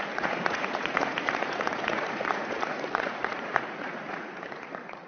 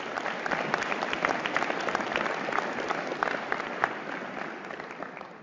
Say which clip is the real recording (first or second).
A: second